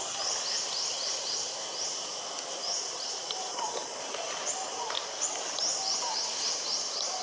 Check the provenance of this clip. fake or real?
real